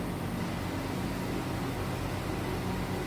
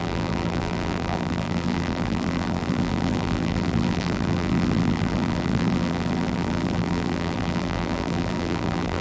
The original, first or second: first